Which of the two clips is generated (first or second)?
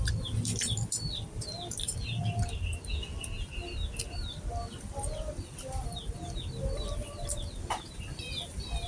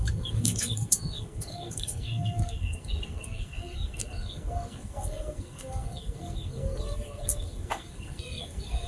second